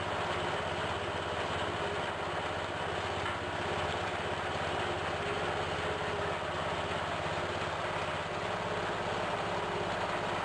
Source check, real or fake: real